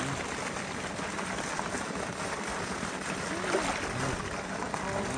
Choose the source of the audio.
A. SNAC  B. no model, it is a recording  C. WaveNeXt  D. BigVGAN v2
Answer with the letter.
B